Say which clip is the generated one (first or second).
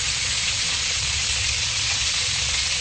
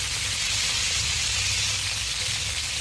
first